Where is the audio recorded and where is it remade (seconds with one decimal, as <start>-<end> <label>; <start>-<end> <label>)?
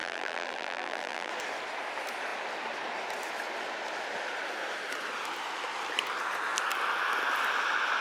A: 0.0-1.3 remade; 1.3-8.0 recorded